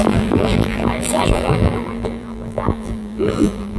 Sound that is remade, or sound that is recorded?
remade